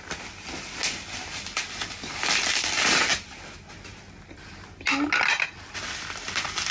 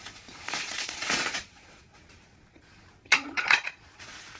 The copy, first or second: second